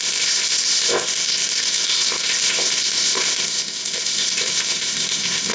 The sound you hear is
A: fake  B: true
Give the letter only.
A